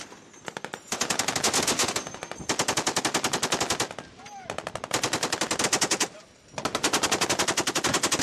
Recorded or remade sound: recorded